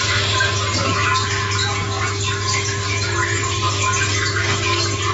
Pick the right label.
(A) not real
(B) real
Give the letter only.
B